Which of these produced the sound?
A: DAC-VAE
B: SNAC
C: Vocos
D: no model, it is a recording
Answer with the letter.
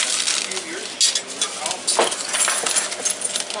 D